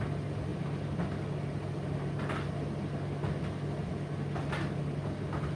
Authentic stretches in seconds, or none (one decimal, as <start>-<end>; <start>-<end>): 0.0-5.6